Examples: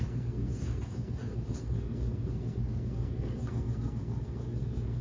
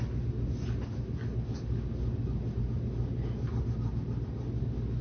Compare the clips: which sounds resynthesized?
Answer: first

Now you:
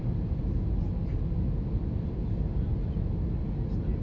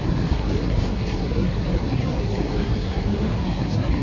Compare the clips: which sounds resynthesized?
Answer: second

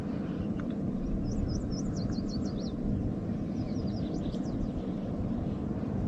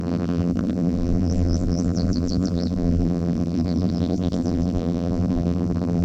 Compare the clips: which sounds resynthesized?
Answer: second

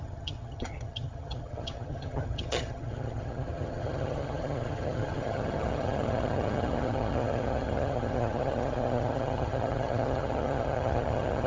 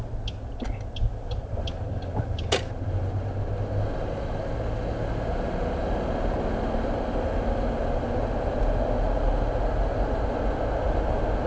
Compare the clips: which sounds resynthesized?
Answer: first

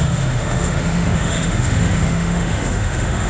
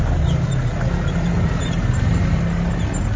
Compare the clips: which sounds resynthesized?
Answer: first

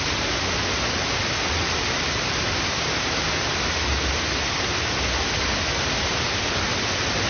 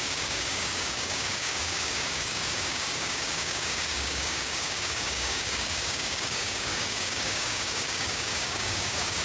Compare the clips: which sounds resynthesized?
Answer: second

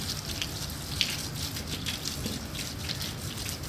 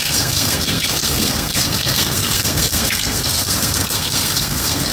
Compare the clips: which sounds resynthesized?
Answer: second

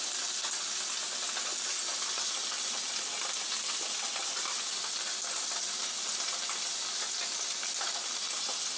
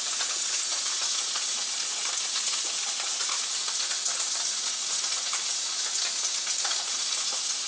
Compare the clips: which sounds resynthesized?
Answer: second